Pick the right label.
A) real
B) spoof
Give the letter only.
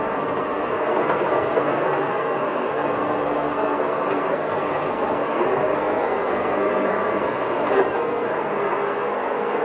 B